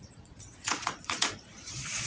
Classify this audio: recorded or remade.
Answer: remade